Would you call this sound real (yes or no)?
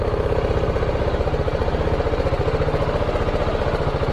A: yes